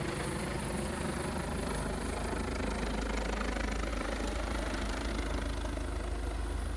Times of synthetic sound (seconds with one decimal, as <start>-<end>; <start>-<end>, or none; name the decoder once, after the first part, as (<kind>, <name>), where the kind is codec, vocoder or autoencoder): 3.9-5.1 (vocoder, BigVGAN v2)